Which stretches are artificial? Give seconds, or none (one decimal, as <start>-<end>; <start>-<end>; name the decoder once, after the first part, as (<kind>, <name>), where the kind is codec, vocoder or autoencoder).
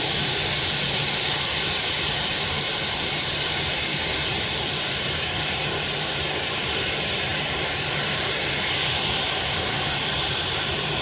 0.0-11.0 (vocoder, BigVGAN v2)